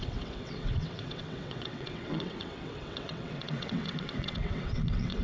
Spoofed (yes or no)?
yes